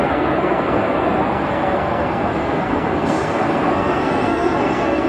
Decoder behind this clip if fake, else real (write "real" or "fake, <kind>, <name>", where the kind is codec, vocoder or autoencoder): fake, codec, SNAC